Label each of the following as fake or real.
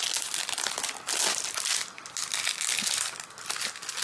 real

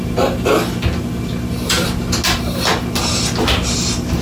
real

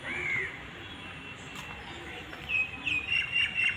real